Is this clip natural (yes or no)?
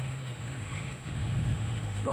no